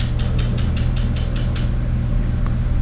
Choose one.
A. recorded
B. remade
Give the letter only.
A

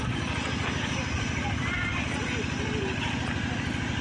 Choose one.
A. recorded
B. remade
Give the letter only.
A